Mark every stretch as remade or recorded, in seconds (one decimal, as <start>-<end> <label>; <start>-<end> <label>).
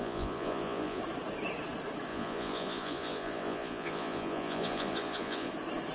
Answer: 0.0-1.0 remade; 1.0-2.1 recorded; 2.1-5.5 remade; 5.5-5.9 recorded